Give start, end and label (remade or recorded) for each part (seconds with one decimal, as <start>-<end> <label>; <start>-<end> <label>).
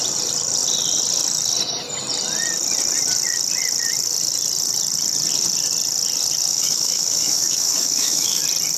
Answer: 0.0-6.5 recorded; 6.5-8.4 remade; 8.4-8.8 recorded